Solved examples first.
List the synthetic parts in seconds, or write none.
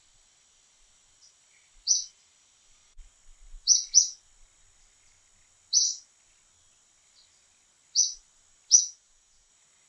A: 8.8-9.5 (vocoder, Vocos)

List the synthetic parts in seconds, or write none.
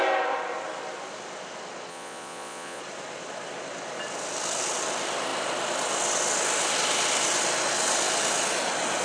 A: 1.9-2.8 (vocoder, Vocos)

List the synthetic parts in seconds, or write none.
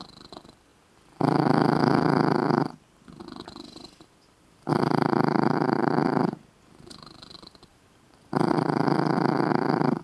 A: none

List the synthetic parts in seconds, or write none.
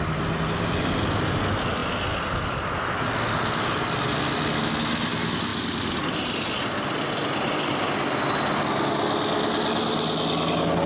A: none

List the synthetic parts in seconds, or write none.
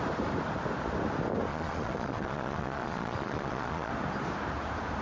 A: 1.5-3.9 (vocoder, Vocos)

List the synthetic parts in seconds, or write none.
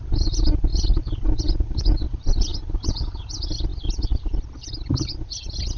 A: none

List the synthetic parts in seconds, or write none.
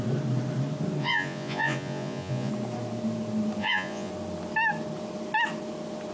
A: 1.0-2.5 (vocoder, Vocos); 3.6-4.1